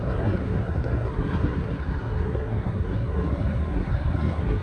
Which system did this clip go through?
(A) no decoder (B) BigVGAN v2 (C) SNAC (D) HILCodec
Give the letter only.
C